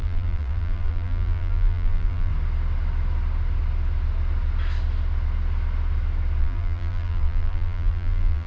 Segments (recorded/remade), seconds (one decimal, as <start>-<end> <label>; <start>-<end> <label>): 0.0-2.3 remade; 2.3-6.4 recorded; 6.4-8.5 remade